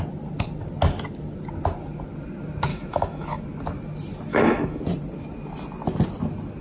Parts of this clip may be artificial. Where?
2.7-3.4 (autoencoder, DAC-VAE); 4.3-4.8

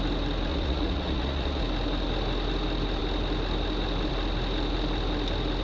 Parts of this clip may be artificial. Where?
0.5-1.6 (vocoder, Vocos)

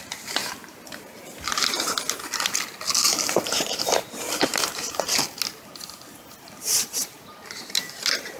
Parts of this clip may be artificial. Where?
0.4-1.6 (vocoder, BigVGAN v2); 3.0-5.2; 6.8-8.4

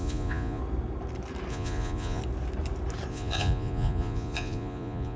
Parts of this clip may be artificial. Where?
0.0-0.6 (vocoder, Vocos); 1.5-2.2; 3.1-5.2

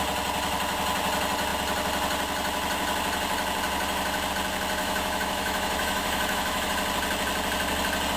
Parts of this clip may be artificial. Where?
4.8-6.7 (autoencoder, DAC-VAE)